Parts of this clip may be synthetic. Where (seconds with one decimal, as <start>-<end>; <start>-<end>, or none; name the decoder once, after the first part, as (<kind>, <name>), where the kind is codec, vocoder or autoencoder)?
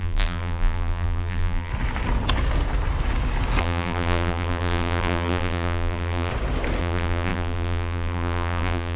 0.0-1.7 (vocoder, BigVGAN v2); 3.6-6.3; 6.8-9.0